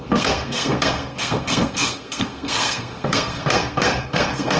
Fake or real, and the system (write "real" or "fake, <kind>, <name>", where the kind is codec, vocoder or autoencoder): fake, codec, SNAC